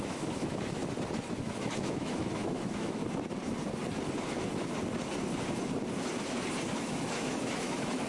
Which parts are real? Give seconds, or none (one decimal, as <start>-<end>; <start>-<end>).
0.8-1.3; 3.0-6.7